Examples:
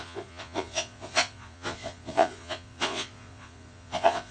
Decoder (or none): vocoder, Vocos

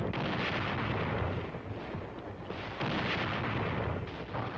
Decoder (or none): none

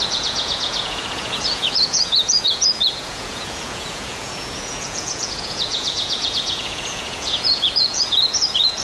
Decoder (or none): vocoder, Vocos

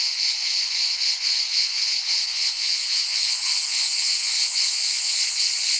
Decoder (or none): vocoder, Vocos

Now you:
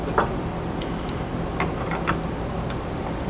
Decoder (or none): none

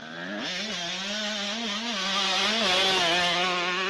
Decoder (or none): none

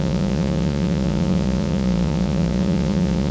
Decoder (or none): vocoder, Vocos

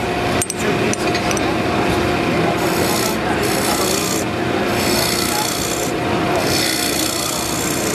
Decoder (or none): none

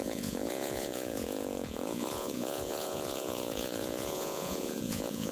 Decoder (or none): vocoder, Vocos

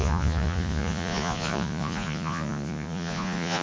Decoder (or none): vocoder, Vocos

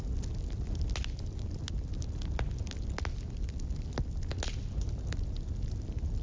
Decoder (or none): none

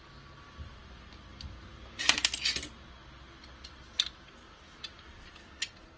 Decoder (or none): none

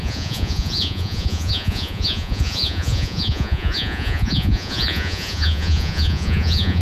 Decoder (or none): vocoder, Vocos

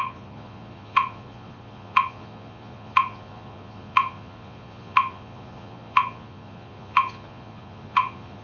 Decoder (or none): vocoder, Vocos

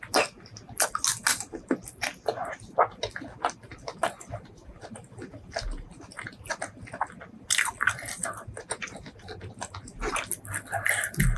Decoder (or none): none